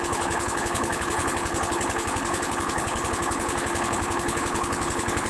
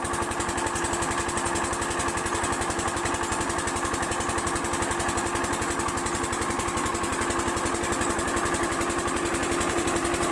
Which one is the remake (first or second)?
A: first